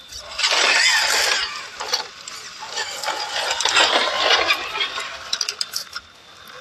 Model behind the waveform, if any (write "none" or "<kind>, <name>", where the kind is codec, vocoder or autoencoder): none